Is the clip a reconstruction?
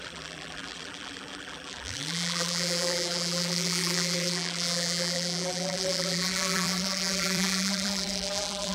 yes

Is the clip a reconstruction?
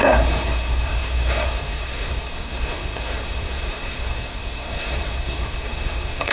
yes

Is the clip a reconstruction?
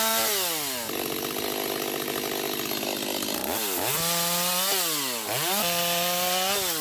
no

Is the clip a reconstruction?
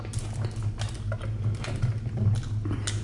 no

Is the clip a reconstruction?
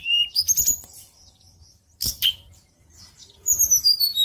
yes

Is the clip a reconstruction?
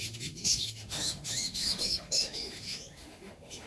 yes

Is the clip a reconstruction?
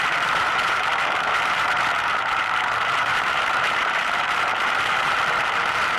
yes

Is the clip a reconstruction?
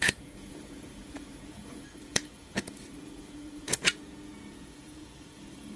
yes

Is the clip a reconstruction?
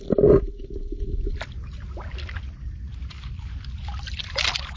no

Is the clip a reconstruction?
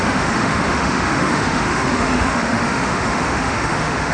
yes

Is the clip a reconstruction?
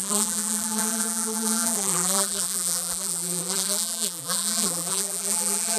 yes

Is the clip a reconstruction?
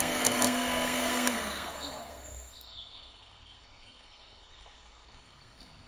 yes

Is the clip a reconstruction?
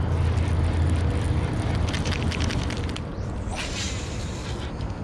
no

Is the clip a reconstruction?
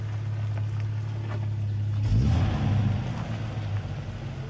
no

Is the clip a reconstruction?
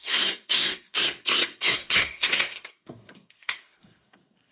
yes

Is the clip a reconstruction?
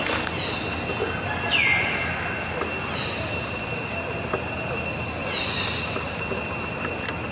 no